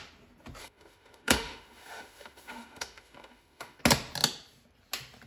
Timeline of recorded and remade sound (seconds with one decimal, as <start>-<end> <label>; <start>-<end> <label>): 0.0-0.6 recorded; 0.6-3.8 remade; 3.8-5.3 recorded